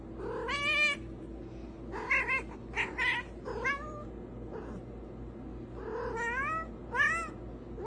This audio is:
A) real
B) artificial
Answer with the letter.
A